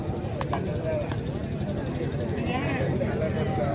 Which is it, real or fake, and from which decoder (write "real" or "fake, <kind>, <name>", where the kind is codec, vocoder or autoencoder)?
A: real